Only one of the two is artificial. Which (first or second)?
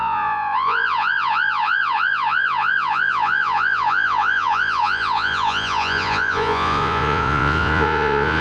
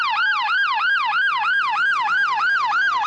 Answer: first